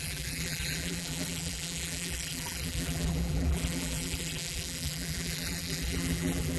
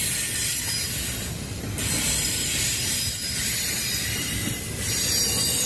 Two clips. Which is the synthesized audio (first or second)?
first